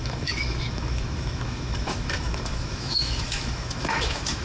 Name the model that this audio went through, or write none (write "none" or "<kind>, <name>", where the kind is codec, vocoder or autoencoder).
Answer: autoencoder, DAC-VAE